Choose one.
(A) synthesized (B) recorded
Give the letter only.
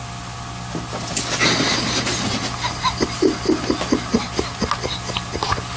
B